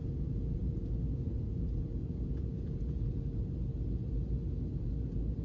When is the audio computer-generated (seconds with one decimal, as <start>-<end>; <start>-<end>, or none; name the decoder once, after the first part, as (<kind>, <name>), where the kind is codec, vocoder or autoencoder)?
0.0-3.2 (vocoder, Vocos)